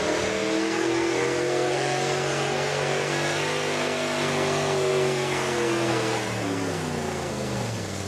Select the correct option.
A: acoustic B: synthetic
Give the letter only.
B